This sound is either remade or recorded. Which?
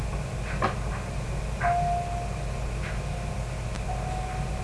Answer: recorded